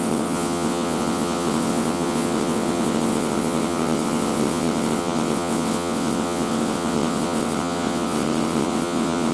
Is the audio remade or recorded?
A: remade